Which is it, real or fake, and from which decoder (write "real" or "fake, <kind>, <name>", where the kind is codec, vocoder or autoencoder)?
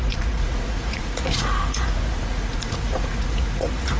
fake, vocoder, Vocos